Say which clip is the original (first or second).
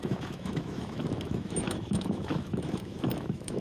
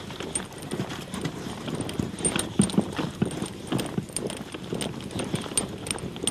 second